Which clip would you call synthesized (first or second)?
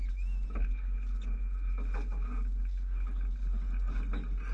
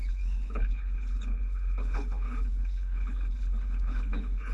second